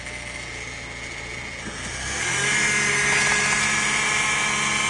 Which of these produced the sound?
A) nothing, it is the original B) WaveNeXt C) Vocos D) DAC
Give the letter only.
A